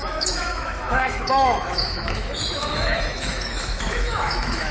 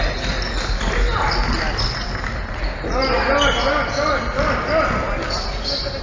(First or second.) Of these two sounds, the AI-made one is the first